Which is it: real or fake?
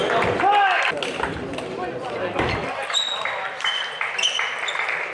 real